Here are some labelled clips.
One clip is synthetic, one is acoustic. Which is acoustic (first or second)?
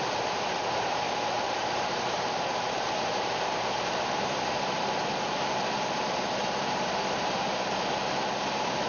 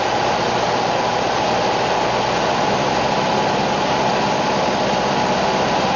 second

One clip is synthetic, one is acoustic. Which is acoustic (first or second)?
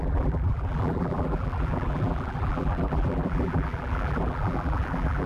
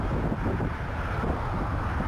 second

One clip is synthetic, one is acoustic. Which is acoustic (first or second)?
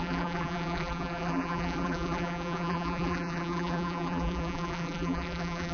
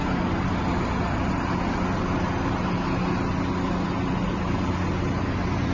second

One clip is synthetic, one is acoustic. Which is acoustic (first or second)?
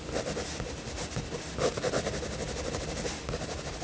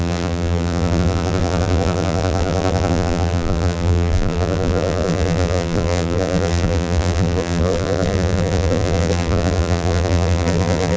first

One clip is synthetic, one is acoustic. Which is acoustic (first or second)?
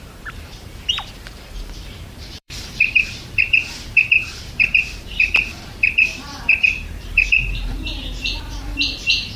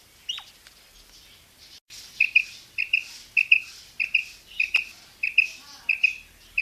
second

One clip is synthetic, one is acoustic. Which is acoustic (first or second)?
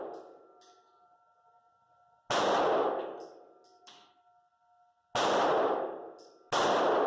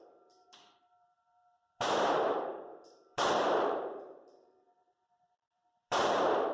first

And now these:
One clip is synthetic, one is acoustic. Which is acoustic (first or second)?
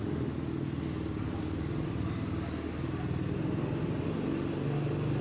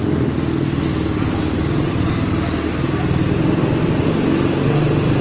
first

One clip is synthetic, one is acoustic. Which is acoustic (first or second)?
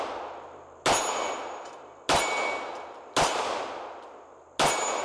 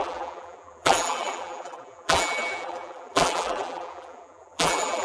first